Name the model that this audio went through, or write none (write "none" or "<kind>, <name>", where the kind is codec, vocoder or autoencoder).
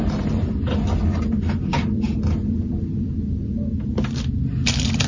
none